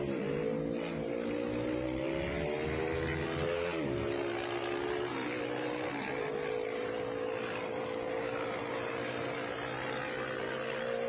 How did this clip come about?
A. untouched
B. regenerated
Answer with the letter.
A